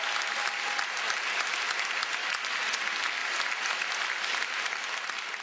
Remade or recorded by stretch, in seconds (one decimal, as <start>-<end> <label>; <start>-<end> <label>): 0.0-5.4 recorded